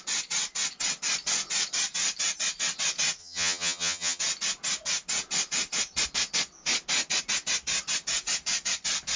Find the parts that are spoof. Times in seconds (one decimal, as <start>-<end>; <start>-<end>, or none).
3.2-4.2